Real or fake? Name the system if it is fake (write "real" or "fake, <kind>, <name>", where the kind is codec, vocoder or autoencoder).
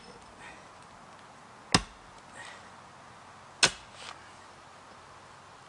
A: real